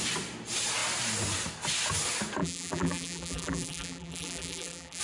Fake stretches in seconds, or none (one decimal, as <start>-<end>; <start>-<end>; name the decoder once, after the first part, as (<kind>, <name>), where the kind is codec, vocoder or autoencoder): 2.4-5.0 (vocoder, BigVGAN v2)